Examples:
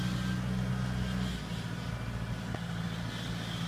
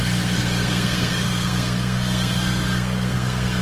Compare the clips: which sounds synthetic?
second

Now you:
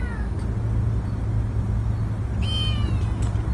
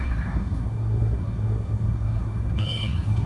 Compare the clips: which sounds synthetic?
second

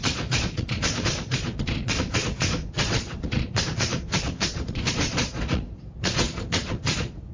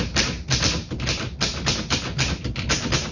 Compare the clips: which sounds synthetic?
first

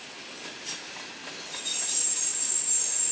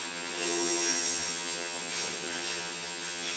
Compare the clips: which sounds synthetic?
second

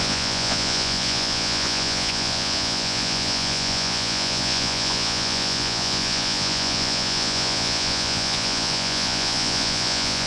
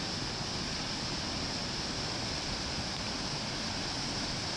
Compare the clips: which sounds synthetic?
first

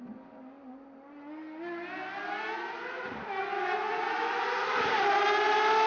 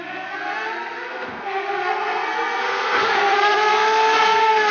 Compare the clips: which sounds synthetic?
second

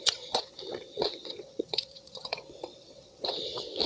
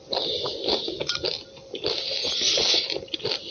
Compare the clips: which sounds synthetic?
first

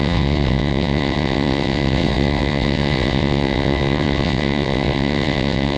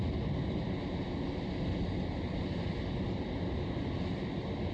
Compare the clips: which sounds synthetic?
first